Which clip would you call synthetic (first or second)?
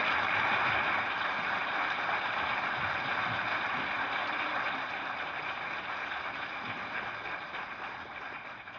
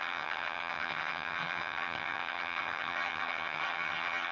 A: second